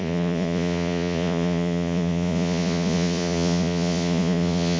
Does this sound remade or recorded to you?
remade